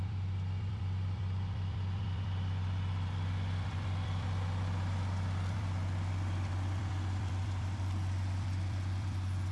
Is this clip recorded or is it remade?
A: remade